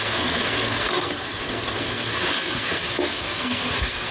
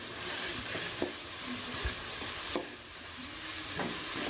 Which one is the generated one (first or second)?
first